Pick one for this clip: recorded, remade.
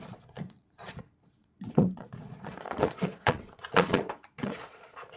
remade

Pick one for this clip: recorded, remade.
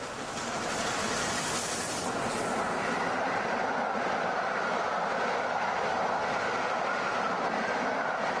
recorded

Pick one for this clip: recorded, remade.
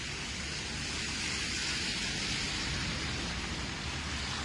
recorded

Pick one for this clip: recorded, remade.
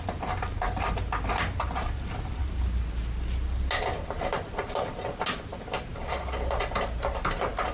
recorded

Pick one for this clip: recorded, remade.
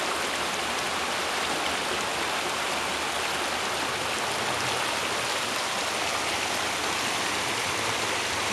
recorded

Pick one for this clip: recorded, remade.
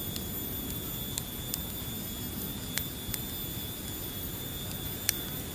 recorded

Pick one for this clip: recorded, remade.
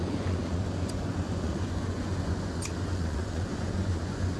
remade